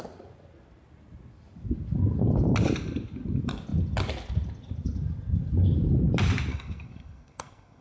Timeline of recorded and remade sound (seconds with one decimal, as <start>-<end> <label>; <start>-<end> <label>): 0.0-6.5 recorded; 6.5-7.8 remade